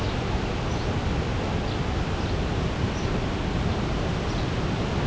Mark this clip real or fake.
real